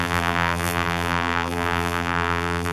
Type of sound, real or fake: fake